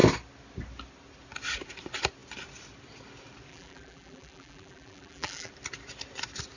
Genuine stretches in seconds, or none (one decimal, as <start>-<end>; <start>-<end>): 0.0-3.5; 5.5-6.6